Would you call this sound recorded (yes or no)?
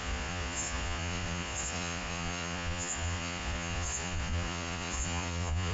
no